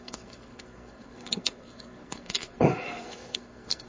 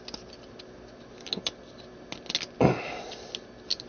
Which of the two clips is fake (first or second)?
first